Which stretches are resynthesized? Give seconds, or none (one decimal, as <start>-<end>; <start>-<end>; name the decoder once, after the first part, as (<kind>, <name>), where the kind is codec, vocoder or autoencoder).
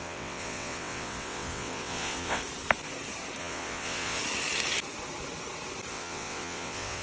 0.0-2.4 (vocoder, WaveNeXt); 3.4-4.2; 5.9-7.0